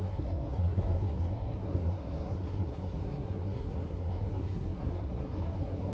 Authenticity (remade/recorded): remade